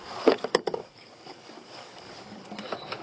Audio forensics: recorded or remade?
remade